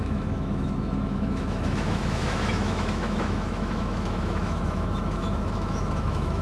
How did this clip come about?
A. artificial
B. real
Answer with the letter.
A